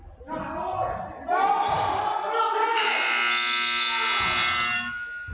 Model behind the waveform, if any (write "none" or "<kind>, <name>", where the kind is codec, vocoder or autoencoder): none